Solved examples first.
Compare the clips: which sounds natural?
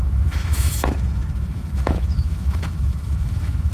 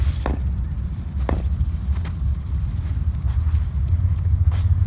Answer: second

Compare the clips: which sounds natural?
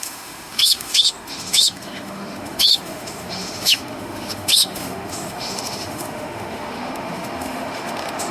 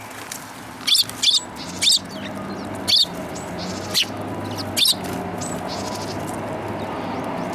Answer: second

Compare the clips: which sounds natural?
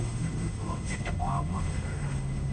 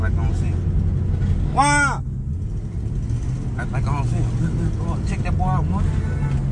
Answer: second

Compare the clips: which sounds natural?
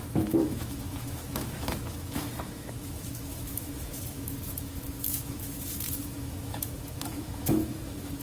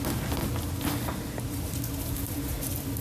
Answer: second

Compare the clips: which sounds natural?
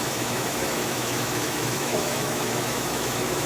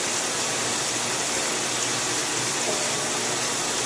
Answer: second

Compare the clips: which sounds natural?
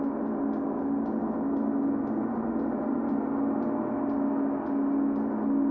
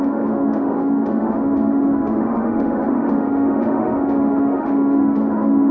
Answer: first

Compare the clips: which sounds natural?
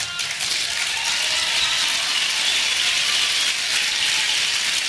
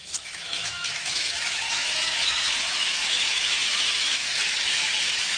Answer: first